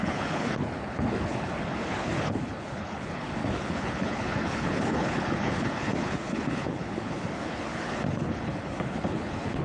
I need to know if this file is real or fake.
fake